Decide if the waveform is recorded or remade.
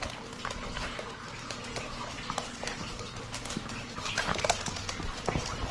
recorded